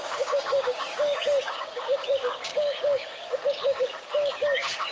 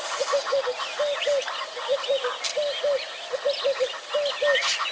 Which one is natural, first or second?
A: second